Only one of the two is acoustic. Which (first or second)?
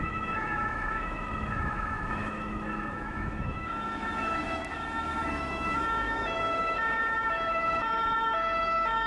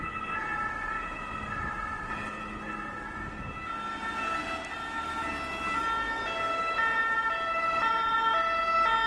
second